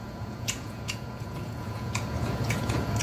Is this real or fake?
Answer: fake